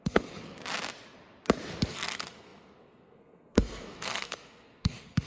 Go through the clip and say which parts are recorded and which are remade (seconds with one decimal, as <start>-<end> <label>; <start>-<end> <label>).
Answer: 0.0-0.6 remade; 0.6-1.9 recorded; 1.9-5.3 remade